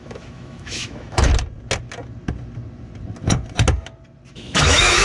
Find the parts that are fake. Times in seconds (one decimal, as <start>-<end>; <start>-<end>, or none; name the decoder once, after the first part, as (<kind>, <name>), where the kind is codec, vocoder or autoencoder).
0.0-1.3 (autoencoder, DAC-VAE); 4.3-5.0